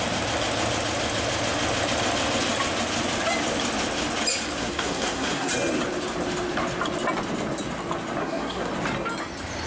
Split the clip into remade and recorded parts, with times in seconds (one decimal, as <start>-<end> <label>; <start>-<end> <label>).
0.0-4.6 recorded; 4.6-5.5 remade; 5.5-8.2 recorded; 8.2-8.7 remade; 8.7-9.7 recorded